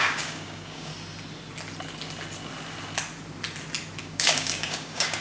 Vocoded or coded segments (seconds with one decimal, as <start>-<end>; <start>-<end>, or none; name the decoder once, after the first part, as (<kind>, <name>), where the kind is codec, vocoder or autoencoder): 0.0-0.9 (codec, DAC); 4.0-5.2